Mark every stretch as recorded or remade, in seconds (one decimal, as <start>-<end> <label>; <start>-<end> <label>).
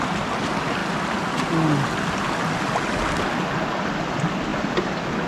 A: 0.0-5.3 recorded